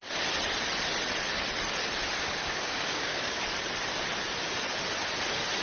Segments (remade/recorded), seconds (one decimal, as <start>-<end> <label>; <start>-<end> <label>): 0.0-2.2 recorded; 2.2-3.4 remade; 3.4-5.6 recorded

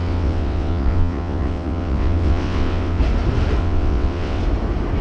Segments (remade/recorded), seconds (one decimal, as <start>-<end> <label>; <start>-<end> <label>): 0.0-3.0 remade; 3.0-3.6 recorded; 3.6-4.4 remade; 4.4-5.0 recorded

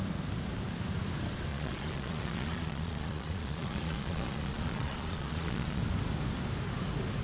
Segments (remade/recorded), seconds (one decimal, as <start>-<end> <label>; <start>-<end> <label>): 0.0-1.5 recorded; 1.5-5.8 remade; 5.8-7.2 recorded

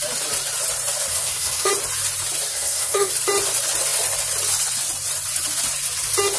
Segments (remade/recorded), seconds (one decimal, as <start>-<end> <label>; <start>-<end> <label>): 0.0-1.1 recorded; 1.1-1.7 remade; 1.7-2.5 recorded; 2.5-3.1 remade; 3.1-6.4 recorded

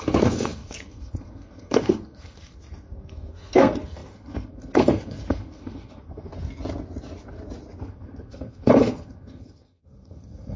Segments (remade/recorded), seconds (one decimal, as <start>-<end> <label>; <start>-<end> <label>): 0.0-6.3 remade; 6.3-7.8 recorded; 7.8-10.6 remade

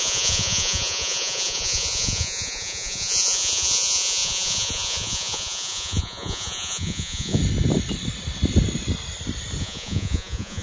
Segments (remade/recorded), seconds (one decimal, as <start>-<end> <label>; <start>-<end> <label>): 0.0-7.4 remade; 7.4-9.6 recorded; 9.6-10.6 remade

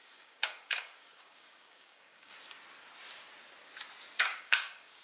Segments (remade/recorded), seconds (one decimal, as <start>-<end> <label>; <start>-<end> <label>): 0.0-2.3 remade; 2.3-4.2 recorded; 4.2-5.0 remade

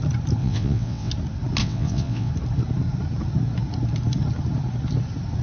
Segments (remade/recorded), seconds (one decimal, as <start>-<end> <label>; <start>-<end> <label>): 0.0-0.4 recorded; 0.4-1.1 remade; 1.1-1.6 recorded; 1.6-2.3 remade; 2.3-5.4 recorded